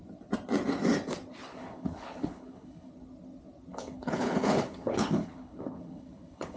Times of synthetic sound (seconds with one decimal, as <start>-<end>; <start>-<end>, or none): 1.5-2.9; 3.7-6.6